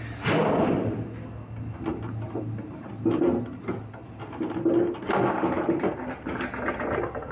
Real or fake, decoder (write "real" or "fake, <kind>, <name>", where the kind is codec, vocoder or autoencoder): real